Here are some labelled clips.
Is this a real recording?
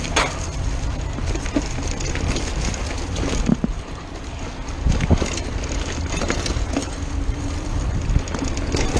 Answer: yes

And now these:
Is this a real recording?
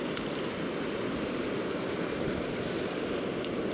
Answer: yes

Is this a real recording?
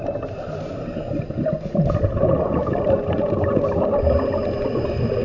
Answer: yes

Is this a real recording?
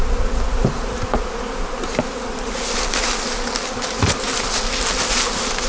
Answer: yes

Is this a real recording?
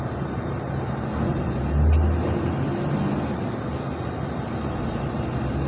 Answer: yes